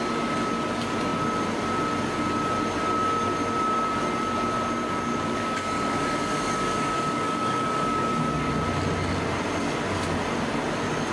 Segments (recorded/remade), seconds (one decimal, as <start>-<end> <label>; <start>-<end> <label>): 0.0-5.1 recorded; 5.1-8.5 remade; 8.5-11.1 recorded